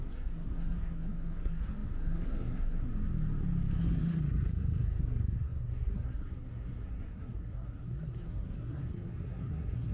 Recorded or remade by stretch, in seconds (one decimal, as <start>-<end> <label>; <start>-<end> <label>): 0.0-2.9 remade; 2.9-3.8 recorded; 3.8-9.9 remade